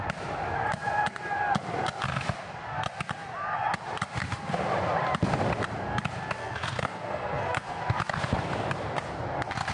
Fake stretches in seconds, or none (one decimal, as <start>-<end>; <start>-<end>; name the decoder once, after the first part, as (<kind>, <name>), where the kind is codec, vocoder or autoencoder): 6.4-7.8 (codec, SNAC)